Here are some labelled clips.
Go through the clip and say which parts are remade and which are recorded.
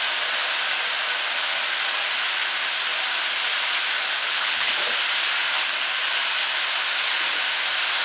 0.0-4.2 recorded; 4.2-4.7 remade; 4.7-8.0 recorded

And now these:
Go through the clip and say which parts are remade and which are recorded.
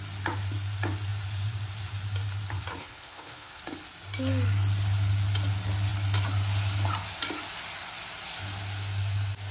0.0-2.8 recorded; 2.8-3.6 remade; 3.6-9.5 recorded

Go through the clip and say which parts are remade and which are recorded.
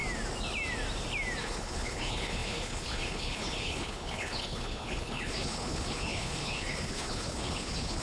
0.0-1.4 recorded; 1.4-8.0 remade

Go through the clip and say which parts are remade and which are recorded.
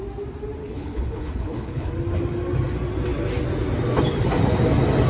0.0-0.6 recorded; 0.6-1.9 remade; 1.9-5.1 recorded